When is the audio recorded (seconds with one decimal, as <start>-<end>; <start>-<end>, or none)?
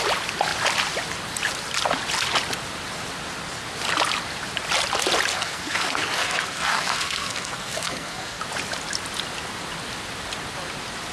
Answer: 0.0-5.3; 8.4-11.1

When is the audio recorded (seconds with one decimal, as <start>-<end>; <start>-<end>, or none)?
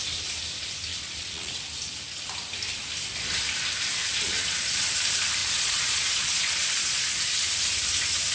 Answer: 0.0-0.9; 1.6-4.1; 4.9-5.4; 7.0-8.3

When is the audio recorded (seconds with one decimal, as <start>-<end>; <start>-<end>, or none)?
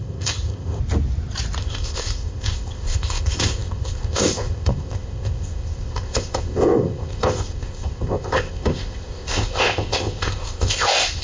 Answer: 0.8-1.6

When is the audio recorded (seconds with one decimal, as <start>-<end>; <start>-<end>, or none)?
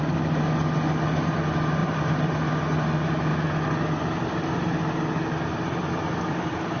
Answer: 0.0-1.8; 2.4-6.8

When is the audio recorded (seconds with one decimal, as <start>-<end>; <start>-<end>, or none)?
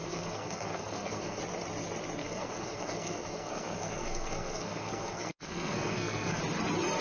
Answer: 1.4-2.2; 6.4-7.0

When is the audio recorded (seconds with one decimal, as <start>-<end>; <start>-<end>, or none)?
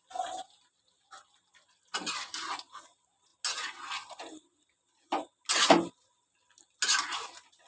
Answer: 0.0-7.7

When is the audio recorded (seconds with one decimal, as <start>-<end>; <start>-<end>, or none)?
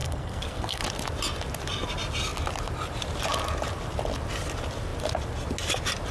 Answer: 0.8-6.1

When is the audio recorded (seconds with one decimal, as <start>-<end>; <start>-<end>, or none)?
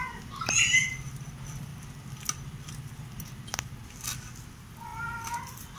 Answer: 0.0-5.8